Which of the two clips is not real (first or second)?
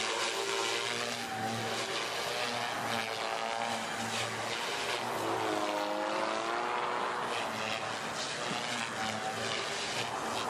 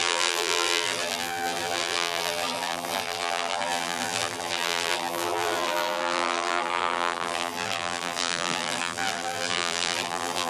second